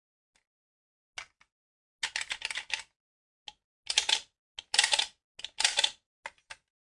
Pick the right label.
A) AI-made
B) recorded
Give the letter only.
B